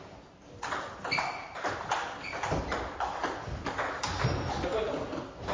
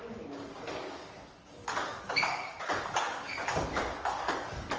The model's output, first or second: second